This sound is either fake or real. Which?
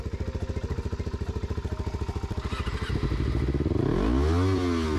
real